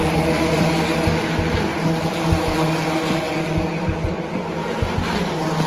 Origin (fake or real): real